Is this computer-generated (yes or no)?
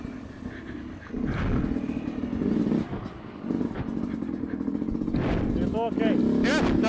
no